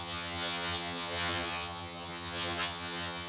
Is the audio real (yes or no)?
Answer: no